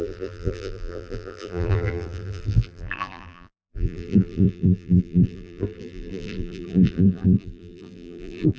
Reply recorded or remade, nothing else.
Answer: remade